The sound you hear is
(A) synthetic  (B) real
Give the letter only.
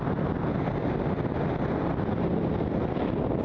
B